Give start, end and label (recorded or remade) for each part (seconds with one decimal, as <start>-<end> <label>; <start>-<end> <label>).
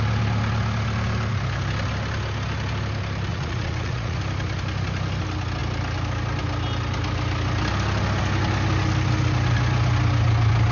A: 0.0-3.3 recorded; 3.3-4.2 remade; 4.2-10.7 recorded